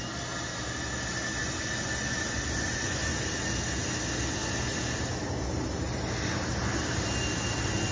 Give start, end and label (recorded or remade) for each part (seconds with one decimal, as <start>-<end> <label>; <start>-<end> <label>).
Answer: 0.0-1.4 recorded; 1.4-3.2 remade; 3.2-7.9 recorded